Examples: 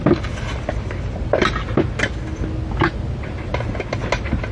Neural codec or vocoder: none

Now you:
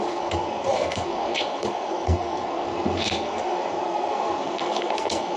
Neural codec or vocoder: codec, SNAC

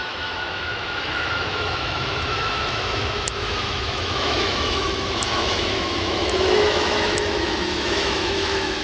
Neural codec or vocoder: autoencoder, DAC-VAE